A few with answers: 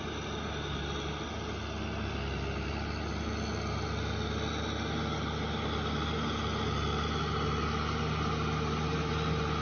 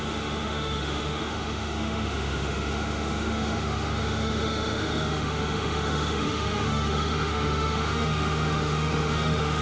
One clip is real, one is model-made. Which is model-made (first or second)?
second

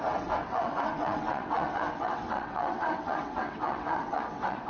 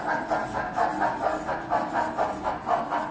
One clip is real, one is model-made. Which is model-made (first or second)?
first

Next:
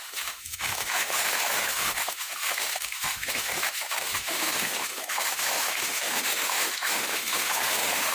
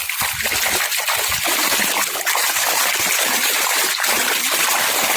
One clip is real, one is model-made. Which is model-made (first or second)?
first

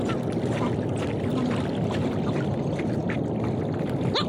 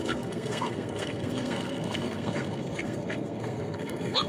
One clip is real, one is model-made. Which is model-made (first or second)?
second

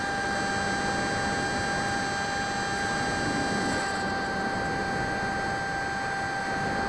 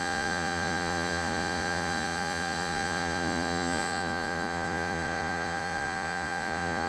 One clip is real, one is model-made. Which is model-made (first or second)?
second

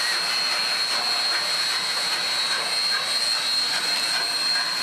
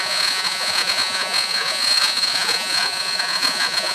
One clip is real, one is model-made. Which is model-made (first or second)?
second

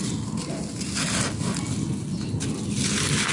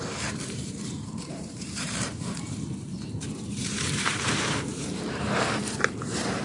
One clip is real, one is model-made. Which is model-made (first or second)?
second